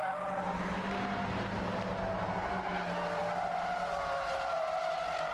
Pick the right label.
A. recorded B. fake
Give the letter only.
A